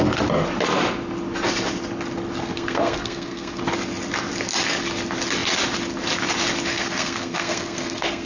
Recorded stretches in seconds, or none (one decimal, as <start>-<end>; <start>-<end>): 0.0-2.4; 3.6-6.7